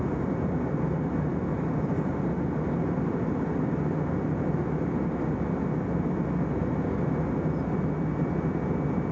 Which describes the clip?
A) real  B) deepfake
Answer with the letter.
A